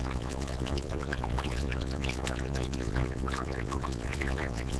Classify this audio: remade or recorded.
remade